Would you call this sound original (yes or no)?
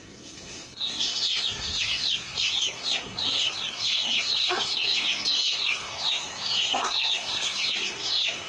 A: no